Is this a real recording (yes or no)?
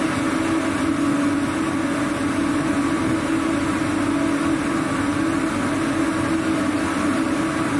yes